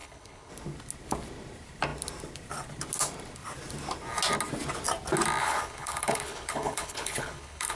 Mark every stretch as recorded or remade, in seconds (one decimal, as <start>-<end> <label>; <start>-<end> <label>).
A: 0.0-0.5 remade; 0.5-5.4 recorded; 5.4-7.8 remade